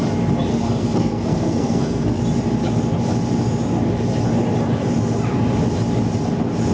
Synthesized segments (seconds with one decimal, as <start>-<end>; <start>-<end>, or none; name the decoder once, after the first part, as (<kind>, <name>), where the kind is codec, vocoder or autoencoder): 0.5-2.2 (codec, SNAC)